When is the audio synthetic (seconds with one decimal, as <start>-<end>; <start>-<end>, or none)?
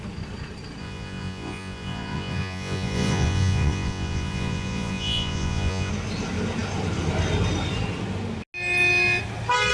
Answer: 0.8-5.9